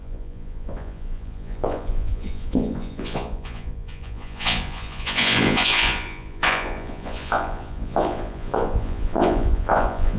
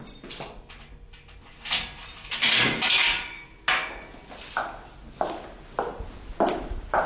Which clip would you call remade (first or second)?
first